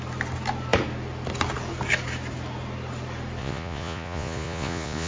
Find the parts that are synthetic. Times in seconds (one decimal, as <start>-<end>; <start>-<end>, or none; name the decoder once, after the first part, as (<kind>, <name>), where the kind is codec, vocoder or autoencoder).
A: 3.4-5.1 (vocoder, Vocos)